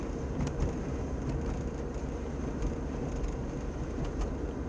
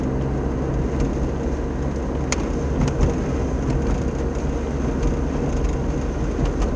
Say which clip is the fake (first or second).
first